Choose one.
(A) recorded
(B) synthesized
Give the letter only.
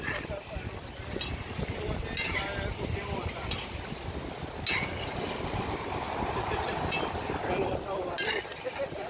A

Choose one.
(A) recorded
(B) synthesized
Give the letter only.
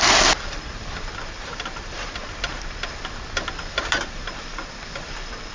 B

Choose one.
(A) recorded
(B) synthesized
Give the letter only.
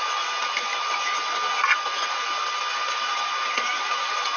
A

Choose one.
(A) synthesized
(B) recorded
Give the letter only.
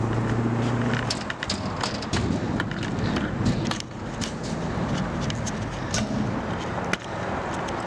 B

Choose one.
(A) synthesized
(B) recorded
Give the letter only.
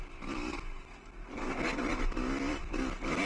B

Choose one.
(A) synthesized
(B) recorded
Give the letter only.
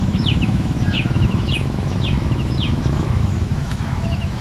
A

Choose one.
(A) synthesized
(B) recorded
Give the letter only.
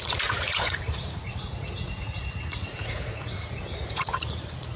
A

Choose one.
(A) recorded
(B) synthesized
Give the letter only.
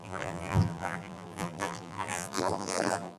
B